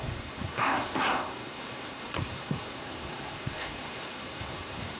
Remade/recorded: remade